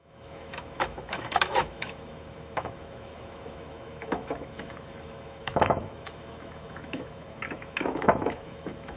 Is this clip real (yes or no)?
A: no